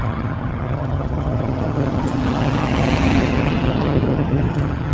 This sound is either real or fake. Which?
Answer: fake